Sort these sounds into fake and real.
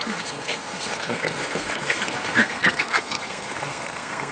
fake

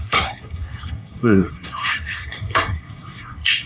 fake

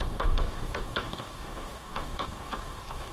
fake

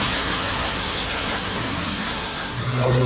fake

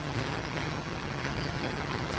fake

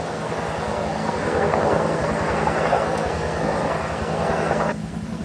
fake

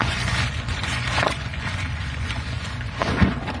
fake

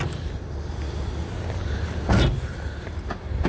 real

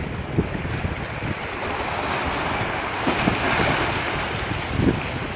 real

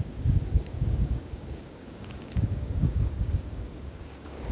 fake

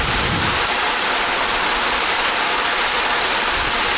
real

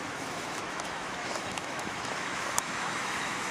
fake